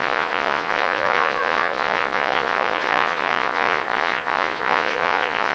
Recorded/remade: remade